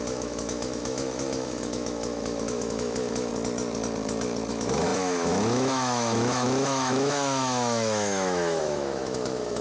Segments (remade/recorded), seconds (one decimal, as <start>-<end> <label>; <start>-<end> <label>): 0.0-3.3 remade; 3.3-4.5 recorded; 4.5-9.6 remade